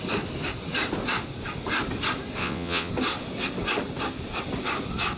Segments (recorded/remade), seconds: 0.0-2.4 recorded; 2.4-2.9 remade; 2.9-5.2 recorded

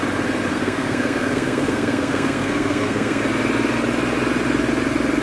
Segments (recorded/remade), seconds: 0.0-0.5 recorded; 0.5-3.2 remade; 3.2-5.2 recorded

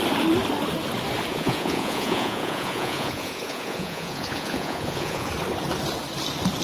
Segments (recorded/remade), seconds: 0.0-1.3 recorded; 1.3-5.3 remade; 5.3-6.6 recorded

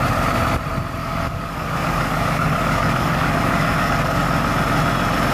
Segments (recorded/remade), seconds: 0.0-1.0 recorded; 1.0-4.2 remade; 4.2-5.3 recorded

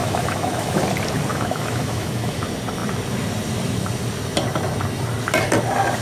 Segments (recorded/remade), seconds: 0.0-0.8 remade; 0.8-1.3 recorded; 1.3-2.4 remade; 2.4-6.0 recorded